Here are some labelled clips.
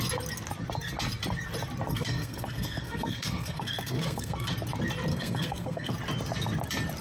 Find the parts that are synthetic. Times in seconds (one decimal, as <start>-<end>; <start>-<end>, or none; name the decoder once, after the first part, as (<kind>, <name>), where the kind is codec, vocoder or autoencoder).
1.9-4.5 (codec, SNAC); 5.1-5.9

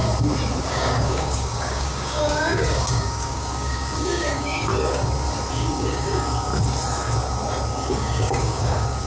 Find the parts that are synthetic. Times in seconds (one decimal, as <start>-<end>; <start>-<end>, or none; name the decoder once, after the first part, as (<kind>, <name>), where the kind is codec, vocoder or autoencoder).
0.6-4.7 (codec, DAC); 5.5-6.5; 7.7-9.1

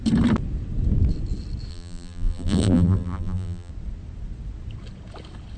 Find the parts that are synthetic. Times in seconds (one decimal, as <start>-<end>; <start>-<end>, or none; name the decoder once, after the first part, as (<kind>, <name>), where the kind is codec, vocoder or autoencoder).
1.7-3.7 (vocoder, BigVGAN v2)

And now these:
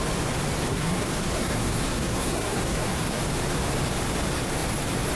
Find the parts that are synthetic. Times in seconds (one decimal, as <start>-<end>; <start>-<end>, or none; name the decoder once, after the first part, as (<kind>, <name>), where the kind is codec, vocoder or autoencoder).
0.7-3.2 (codec, SNAC)